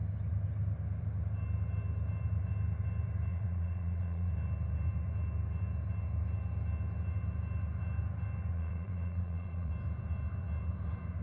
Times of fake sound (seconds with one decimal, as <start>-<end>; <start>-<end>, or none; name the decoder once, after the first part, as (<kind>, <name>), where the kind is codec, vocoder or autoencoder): 3.3-4.3 (vocoder, Vocos); 8.5-9.7